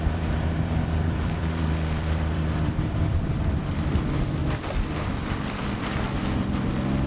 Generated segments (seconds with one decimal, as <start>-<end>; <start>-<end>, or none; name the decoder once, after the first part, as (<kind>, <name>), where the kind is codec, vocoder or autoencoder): 0.0-4.4 (vocoder, BigVGAN v2); 5.5-7.1